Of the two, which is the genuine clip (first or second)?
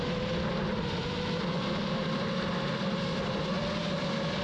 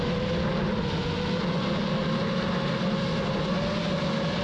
second